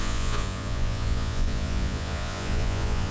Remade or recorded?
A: remade